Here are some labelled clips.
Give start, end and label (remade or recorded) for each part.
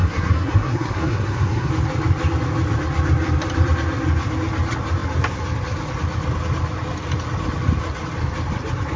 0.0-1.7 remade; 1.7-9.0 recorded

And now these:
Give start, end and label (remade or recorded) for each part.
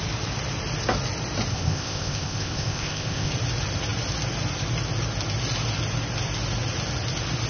0.0-1.5 recorded; 1.5-3.3 remade; 3.3-7.5 recorded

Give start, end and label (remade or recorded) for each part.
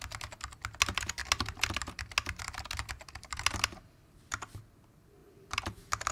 0.0-6.1 recorded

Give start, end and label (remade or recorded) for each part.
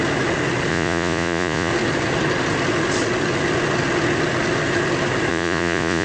0.0-0.7 recorded; 0.7-1.7 remade; 1.7-5.3 recorded; 5.3-6.0 remade